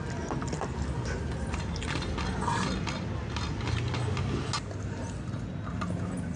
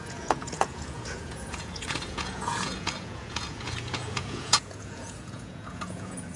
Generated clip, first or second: second